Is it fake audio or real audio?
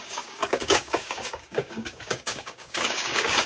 fake